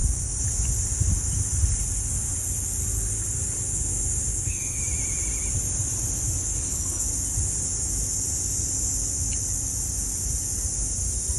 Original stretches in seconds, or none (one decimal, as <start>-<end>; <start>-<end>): 0.0-4.3; 4.8-6.5; 7.1-11.4